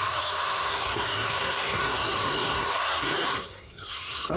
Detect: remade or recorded remade